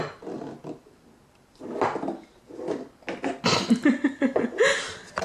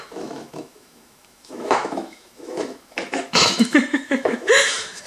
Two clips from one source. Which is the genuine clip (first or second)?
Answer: first